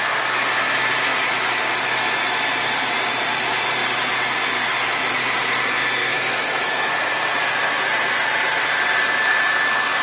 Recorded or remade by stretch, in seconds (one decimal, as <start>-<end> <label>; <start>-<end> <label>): 0.0-6.0 recorded; 6.0-6.9 remade; 6.9-10.0 recorded